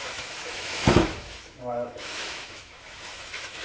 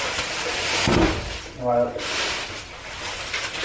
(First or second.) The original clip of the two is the second